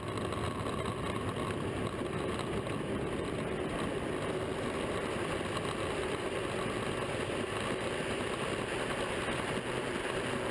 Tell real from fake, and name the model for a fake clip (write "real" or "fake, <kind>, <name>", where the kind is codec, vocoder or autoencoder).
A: real